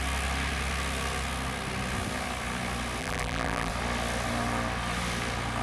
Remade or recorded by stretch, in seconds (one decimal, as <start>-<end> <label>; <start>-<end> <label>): 0.0-3.0 recorded; 3.0-3.7 remade; 3.7-5.6 recorded